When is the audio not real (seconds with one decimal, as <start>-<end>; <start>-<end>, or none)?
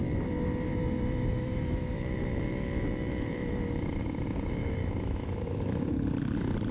0.7-4.0; 4.6-5.9